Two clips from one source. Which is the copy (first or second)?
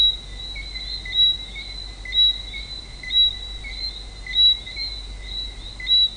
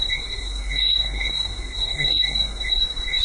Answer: second